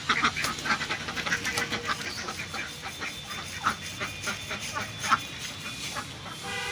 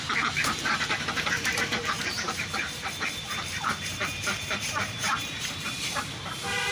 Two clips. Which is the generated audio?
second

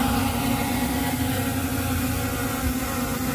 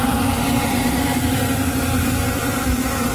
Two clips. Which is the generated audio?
second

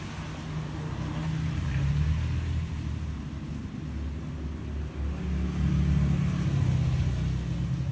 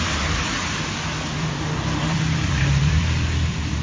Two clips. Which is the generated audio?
second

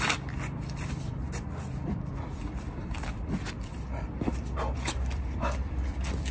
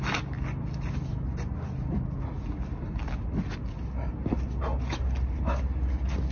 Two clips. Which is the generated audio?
first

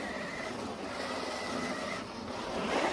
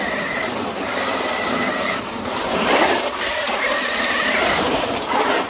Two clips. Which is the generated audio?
second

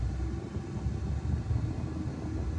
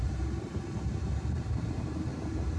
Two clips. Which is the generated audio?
second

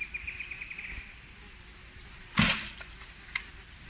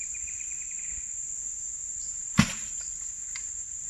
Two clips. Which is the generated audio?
second